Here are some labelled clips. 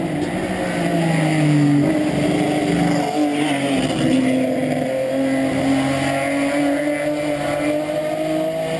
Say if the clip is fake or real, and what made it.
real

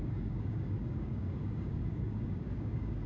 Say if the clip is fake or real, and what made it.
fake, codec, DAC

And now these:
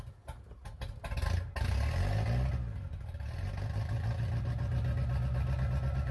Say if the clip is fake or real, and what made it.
real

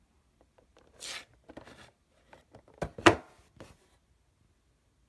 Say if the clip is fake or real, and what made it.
real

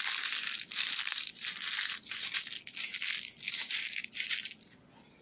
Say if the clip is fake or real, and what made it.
real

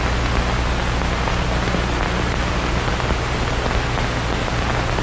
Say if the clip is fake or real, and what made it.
real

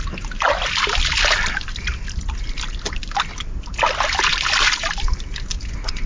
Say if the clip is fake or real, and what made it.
real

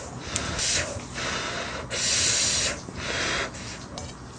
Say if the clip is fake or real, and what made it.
real